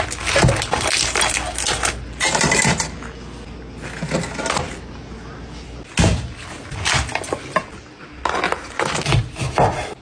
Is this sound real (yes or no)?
yes